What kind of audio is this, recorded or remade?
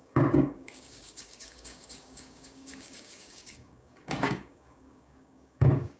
remade